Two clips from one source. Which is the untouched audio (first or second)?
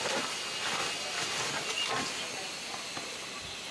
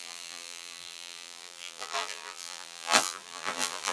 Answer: first